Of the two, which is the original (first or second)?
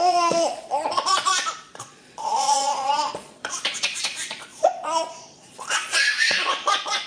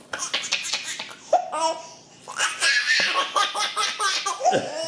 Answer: second